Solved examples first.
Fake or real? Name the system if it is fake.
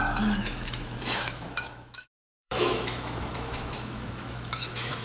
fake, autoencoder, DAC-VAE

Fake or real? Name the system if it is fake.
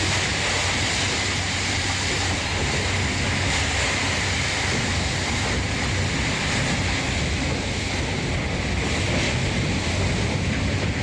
real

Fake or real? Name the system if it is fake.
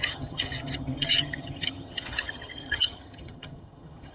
fake, vocoder, HiFi-GAN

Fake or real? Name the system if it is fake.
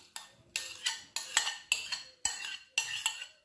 real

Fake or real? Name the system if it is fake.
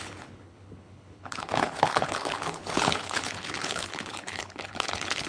fake, codec, HILCodec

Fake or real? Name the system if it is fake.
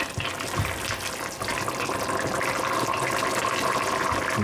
real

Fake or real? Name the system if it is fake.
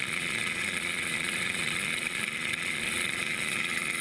fake, vocoder, Vocos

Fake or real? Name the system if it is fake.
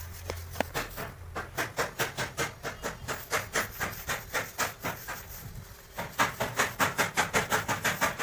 real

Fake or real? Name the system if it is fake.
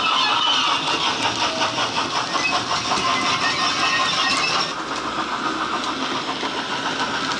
real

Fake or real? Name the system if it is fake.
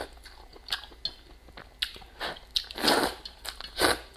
real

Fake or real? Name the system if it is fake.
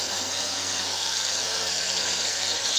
fake, codec, SNAC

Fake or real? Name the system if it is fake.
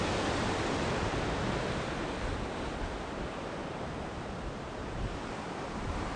real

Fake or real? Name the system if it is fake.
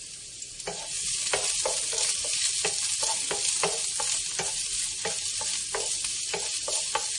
real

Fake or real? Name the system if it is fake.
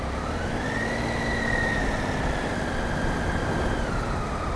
real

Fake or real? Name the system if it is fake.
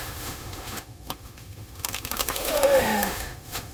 fake, autoencoder, DAC-VAE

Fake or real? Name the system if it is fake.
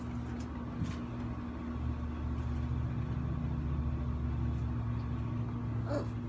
real